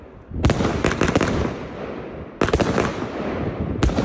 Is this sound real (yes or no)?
yes